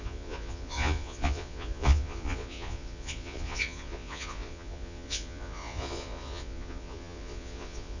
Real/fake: fake